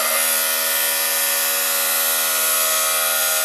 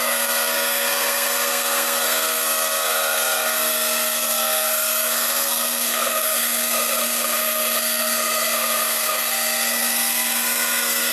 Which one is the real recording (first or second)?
first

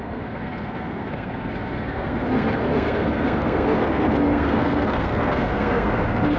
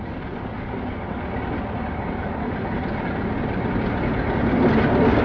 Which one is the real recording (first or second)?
second